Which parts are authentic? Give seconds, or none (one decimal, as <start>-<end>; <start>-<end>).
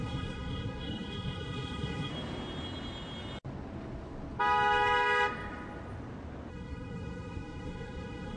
2.1-6.5